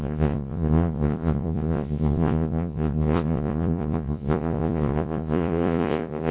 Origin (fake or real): fake